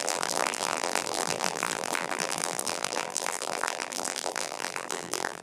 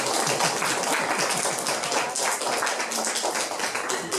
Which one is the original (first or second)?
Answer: second